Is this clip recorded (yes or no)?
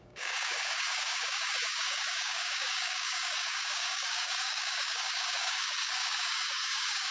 no